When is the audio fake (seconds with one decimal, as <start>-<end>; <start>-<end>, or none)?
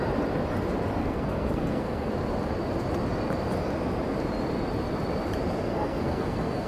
1.0-2.1; 5.7-6.7